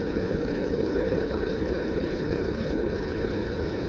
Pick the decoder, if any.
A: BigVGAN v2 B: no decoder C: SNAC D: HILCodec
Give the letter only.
D